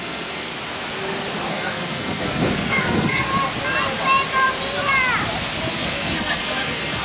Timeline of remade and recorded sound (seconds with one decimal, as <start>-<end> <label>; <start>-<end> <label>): 0.0-0.5 remade; 0.5-1.5 recorded; 1.5-3.3 remade; 3.3-5.7 recorded; 5.7-7.0 remade